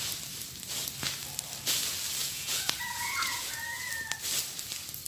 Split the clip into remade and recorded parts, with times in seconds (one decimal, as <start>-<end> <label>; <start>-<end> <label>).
0.0-2.2 recorded; 2.2-3.9 remade; 3.9-5.1 recorded